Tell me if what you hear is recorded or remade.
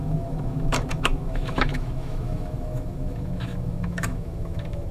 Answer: remade